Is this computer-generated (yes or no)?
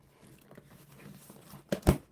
yes